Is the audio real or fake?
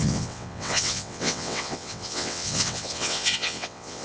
fake